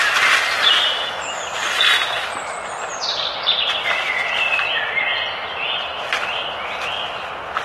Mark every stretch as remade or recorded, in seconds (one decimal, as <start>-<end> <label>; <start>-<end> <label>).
0.0-1.6 recorded; 1.6-6.0 remade; 6.0-7.6 recorded